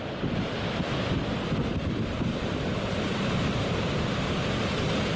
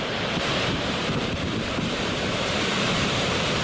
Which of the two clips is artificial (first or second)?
second